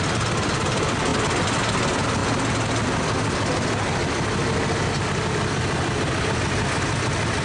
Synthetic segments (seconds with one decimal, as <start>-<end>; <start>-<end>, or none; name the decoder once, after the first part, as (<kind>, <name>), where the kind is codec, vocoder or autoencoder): none